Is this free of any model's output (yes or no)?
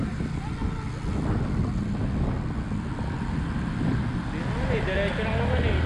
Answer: yes